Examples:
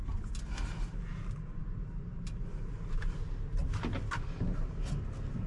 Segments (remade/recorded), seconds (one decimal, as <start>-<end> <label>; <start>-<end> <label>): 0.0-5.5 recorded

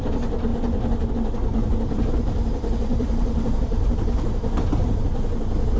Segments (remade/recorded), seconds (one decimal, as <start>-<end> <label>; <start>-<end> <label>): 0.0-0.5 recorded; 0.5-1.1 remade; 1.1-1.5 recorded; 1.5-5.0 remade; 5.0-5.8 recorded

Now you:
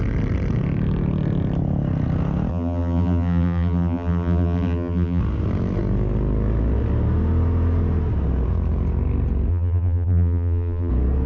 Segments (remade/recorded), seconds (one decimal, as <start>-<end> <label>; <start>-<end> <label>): 0.0-2.5 recorded; 2.5-5.2 remade; 5.2-9.5 recorded; 9.5-10.9 remade; 10.9-11.3 recorded

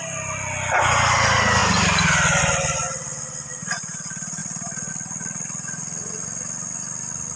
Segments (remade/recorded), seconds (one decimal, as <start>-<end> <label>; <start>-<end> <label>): 0.0-1.6 recorded; 1.6-2.4 remade; 2.4-4.4 recorded; 4.4-4.9 remade; 4.9-7.4 recorded